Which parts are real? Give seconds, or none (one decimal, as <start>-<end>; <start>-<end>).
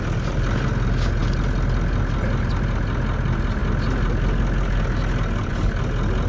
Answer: 0.0-6.3